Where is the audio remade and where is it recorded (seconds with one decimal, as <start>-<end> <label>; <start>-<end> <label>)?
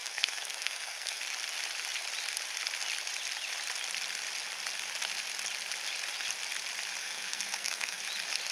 0.0-1.2 remade; 1.2-7.0 recorded; 7.0-8.0 remade; 8.0-8.5 recorded